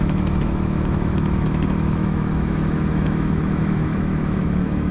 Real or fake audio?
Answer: fake